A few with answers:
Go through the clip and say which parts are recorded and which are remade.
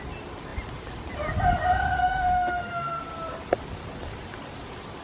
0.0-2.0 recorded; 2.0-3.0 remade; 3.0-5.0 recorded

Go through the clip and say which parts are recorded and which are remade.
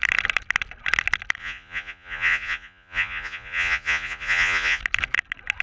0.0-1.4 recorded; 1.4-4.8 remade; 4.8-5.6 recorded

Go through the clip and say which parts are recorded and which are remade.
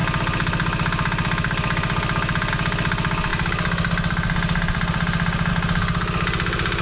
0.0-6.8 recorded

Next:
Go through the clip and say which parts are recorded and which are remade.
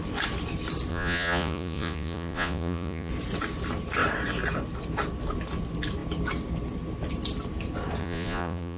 0.0-0.9 recorded; 0.9-3.1 remade; 3.1-8.0 recorded; 8.0-8.8 remade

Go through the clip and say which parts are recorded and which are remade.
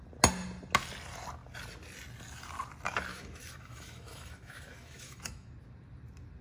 0.0-3.1 recorded; 3.1-5.5 remade; 5.5-6.4 recorded